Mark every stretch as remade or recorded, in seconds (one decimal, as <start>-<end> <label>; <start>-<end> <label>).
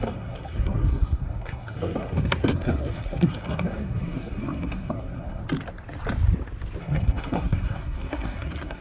0.0-5.4 remade; 5.4-6.8 recorded; 6.8-8.8 remade